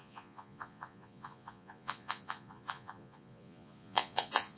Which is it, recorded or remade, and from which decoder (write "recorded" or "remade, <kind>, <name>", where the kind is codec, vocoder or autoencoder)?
remade, vocoder, Vocos